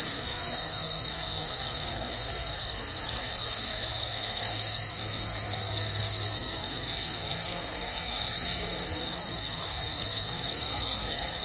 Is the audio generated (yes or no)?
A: yes